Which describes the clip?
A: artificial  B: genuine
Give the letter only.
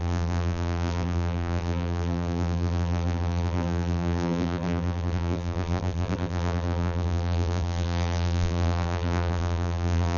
A